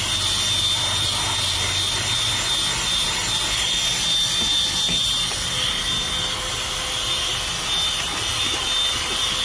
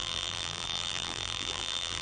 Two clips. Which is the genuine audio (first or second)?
first